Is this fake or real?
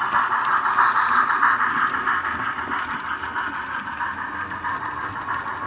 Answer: real